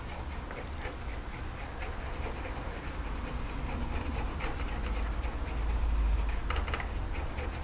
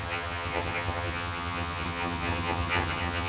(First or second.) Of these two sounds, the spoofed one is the second